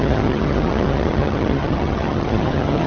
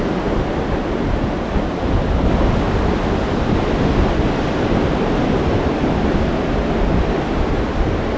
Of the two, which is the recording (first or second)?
second